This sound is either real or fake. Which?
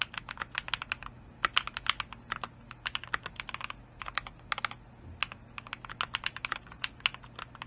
real